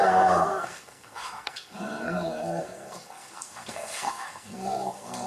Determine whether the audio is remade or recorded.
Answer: remade